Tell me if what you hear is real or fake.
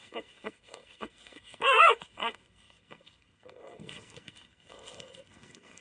fake